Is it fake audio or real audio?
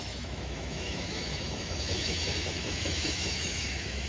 fake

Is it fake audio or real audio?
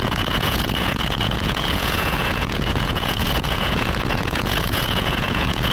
fake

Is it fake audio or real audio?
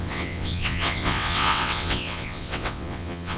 fake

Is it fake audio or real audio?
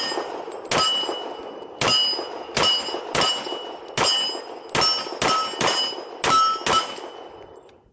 real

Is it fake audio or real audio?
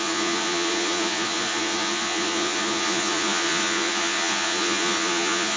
fake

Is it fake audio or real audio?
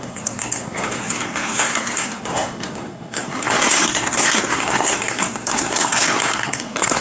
fake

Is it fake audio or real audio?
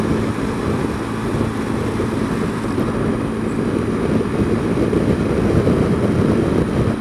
real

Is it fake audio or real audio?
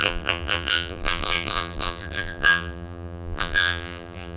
fake